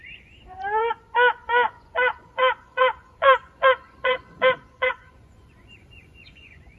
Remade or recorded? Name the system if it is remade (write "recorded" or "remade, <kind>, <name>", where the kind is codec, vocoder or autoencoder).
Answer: remade, vocoder, Vocos